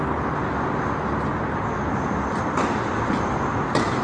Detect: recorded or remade recorded